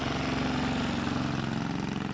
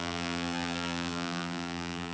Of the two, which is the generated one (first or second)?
second